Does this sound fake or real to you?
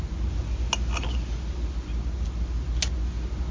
real